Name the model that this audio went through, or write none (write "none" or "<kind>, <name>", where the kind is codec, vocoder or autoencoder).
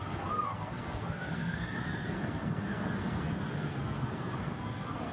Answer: codec, SNAC